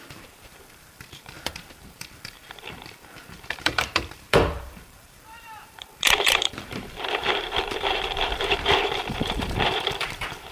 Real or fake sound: fake